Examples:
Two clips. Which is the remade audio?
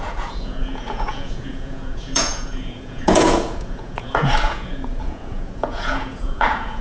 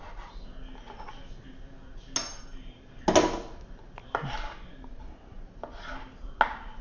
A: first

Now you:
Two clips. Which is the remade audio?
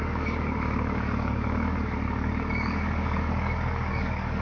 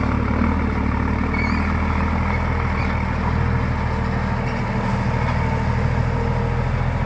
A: first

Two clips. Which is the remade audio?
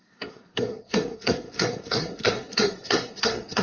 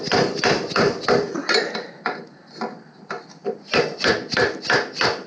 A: first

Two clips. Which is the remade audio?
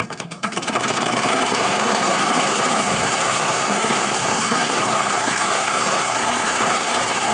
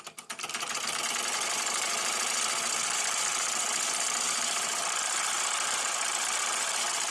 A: first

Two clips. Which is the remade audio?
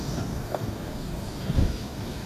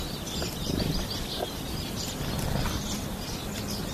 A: first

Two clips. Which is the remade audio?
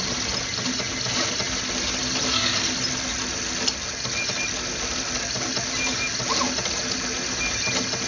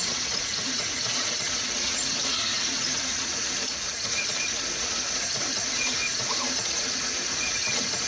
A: second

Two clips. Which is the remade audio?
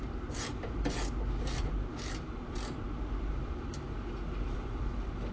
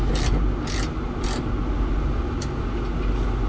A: first